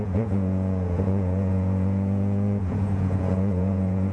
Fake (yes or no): yes